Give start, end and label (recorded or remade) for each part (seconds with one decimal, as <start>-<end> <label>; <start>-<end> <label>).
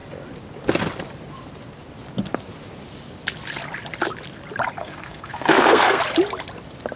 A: 0.0-4.8 recorded; 4.8-6.0 remade; 6.0-7.0 recorded